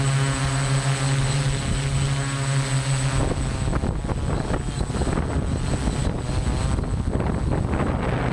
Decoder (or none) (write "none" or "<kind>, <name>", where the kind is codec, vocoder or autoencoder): none